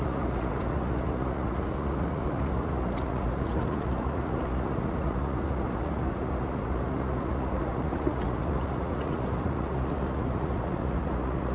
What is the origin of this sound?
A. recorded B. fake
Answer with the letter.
B